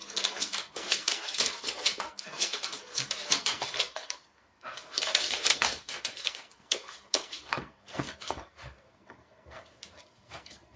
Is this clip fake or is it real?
fake